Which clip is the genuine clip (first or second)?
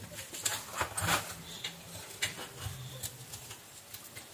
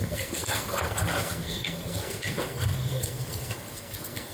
first